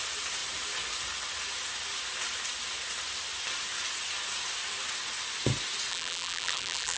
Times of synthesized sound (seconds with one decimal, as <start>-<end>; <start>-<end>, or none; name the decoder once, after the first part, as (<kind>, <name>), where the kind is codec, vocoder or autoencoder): 5.9-7.0 (vocoder, BigVGAN v2)